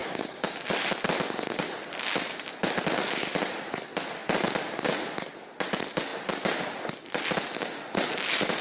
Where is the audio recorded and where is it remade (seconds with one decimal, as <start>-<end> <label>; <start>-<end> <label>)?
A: 0.0-0.7 remade; 0.7-8.6 recorded